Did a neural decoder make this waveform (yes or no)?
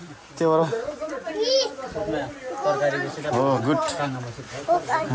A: no